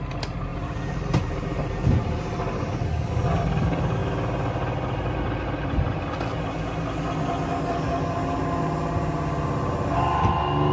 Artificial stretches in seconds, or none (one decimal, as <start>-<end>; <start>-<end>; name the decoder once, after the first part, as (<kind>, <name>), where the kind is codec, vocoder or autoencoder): 0.5-2.7 (vocoder, BigVGAN v2)